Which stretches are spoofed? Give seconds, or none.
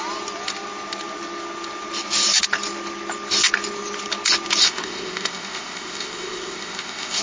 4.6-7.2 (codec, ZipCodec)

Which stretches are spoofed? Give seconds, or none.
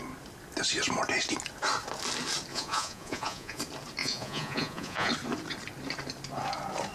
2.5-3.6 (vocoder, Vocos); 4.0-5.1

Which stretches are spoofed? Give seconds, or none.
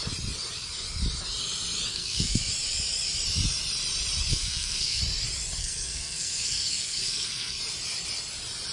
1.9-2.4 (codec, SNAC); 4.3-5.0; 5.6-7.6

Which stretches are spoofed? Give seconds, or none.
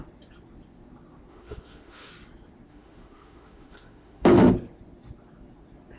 1.3-2.1 (autoencoder, DAC-VAE); 2.7-4.5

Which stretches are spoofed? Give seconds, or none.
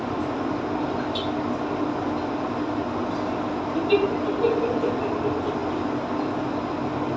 none